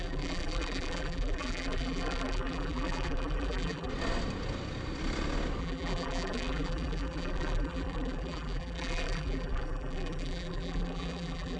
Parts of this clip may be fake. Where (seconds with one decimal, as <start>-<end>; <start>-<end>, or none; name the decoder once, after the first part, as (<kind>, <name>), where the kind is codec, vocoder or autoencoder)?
0.0-3.9 (vocoder, BigVGAN v2); 5.6-11.6